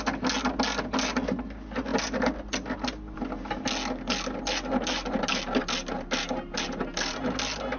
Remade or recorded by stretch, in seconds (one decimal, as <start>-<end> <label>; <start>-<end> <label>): 0.0-7.8 recorded

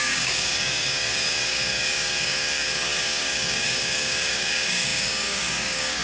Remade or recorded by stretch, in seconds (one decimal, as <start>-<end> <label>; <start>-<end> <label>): 0.0-6.0 remade

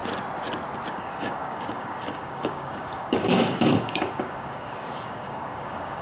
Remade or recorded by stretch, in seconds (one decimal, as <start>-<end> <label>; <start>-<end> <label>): 0.0-0.9 recorded; 0.9-6.0 remade

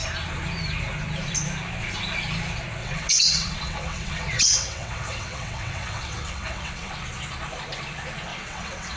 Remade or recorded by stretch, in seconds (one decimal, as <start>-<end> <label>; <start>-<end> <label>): 0.0-2.8 recorded; 2.8-6.9 remade; 6.9-8.3 recorded; 8.3-9.0 remade

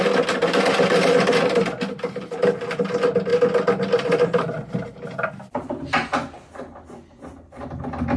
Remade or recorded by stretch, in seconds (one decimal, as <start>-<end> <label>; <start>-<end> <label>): 0.0-8.2 recorded